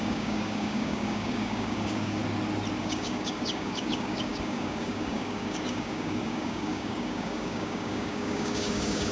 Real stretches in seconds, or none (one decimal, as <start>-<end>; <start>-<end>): 2.2-2.8